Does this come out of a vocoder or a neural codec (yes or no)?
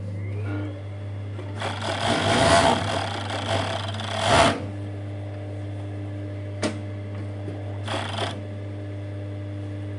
yes